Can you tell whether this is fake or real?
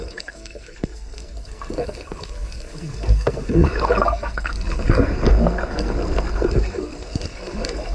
fake